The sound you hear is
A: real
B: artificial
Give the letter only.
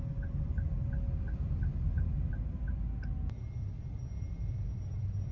A